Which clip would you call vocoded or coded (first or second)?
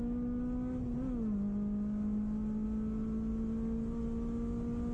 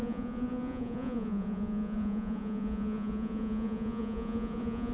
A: second